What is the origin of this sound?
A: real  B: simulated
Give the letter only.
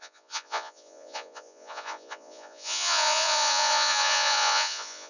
B